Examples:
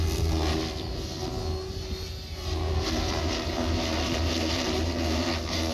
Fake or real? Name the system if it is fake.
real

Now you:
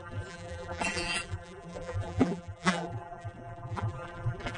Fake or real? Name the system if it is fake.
fake, vocoder, BigVGAN v2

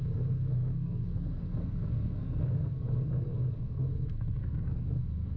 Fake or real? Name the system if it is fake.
fake, codec, SNAC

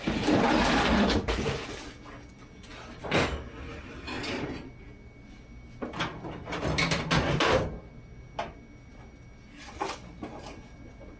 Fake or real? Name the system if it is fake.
real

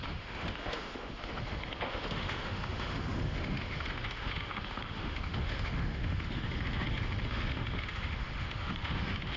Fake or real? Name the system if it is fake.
fake, autoencoder, DAC-VAE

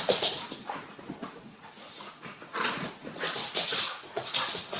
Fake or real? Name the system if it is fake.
fake, vocoder, Vocos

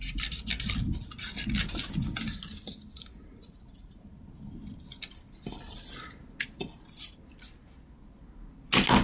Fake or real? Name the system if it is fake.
real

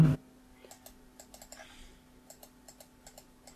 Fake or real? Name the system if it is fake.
real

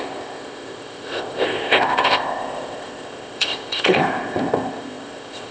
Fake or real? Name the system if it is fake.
fake, codec, ZipCodec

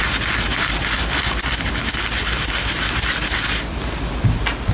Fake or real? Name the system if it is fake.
real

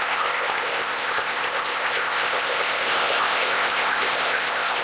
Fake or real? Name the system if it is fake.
fake, codec, ZipCodec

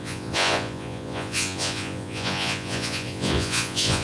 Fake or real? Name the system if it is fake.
fake, vocoder, Vocos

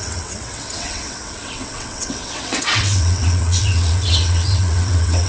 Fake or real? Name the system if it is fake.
fake, vocoder, WaveNeXt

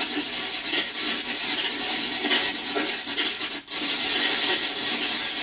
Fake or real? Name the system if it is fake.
real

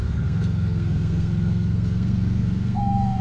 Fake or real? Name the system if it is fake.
fake, codec, SNAC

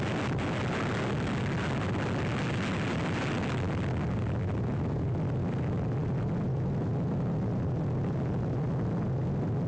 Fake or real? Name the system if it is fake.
real